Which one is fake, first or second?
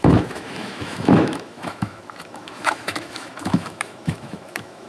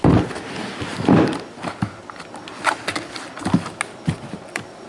first